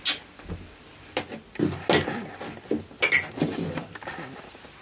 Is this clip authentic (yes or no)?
yes